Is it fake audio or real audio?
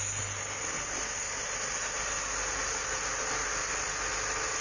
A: real